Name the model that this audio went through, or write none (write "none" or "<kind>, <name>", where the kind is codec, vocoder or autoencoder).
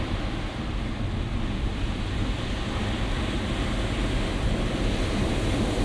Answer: none